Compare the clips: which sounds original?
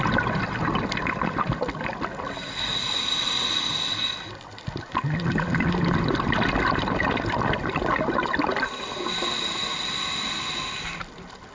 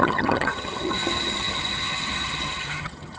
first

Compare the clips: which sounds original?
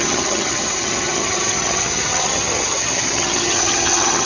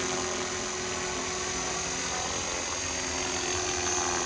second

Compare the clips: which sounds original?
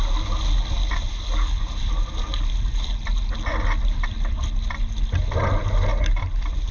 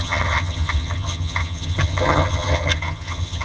first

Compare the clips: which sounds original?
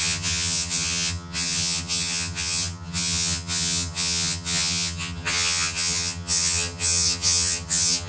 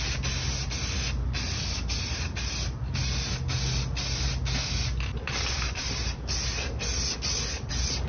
second